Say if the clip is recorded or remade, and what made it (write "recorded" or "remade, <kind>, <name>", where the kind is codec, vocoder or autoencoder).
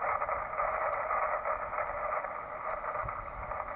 recorded